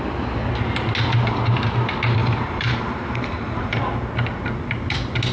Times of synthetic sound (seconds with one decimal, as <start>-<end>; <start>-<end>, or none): 2.2-3.8